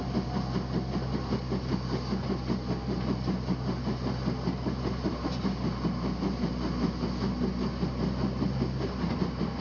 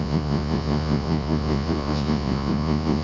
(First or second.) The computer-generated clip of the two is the second